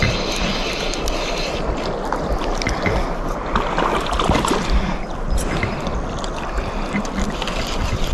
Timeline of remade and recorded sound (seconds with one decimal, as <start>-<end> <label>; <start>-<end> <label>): 0.0-8.1 recorded